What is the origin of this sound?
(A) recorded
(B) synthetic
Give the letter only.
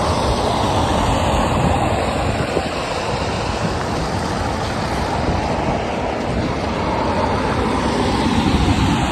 A